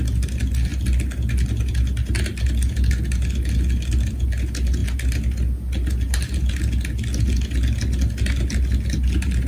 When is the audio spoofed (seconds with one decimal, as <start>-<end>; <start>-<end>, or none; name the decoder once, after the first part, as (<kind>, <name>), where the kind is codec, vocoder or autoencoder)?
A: none